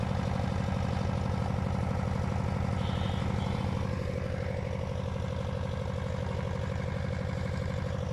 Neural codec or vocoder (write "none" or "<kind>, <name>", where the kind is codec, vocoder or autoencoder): none